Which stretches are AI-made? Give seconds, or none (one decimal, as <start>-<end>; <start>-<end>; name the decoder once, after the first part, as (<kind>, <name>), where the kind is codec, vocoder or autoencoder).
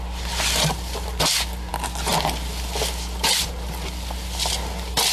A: none